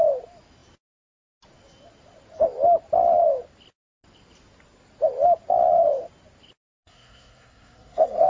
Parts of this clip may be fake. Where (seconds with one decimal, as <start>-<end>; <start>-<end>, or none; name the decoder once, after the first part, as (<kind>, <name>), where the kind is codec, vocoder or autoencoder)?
6.7-8.3 (codec, SNAC)